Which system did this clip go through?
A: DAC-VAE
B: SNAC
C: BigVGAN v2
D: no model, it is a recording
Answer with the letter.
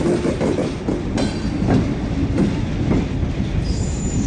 C